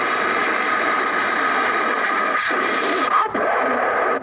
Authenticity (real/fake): fake